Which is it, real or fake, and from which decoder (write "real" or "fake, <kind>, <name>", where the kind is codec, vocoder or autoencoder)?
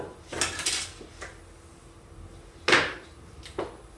real